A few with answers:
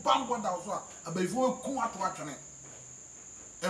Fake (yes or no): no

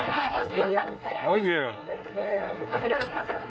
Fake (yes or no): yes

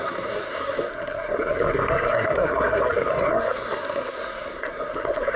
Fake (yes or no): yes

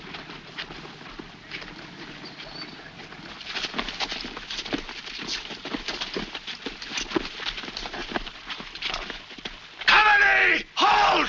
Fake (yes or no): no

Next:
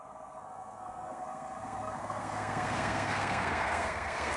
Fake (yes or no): yes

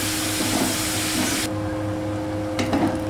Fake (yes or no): no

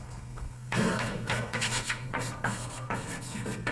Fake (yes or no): yes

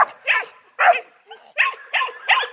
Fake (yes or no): no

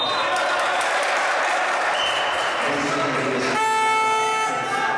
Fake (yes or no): no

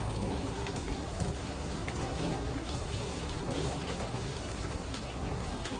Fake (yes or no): yes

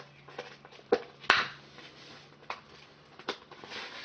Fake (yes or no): no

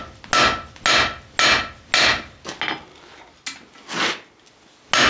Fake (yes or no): no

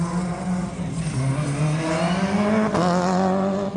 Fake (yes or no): no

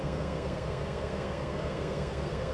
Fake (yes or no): yes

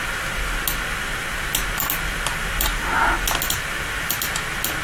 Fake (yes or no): no